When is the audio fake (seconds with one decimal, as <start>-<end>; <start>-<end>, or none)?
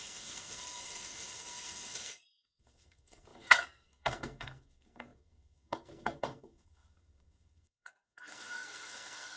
0.0-9.4